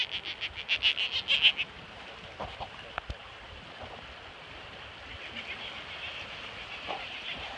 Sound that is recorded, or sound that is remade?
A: recorded